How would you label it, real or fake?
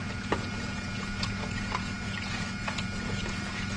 fake